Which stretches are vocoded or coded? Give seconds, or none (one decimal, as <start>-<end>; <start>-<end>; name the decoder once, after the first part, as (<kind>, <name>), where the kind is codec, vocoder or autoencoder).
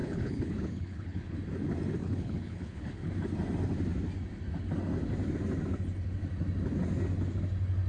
0.0-1.4 (codec, HILCodec); 2.0-3.1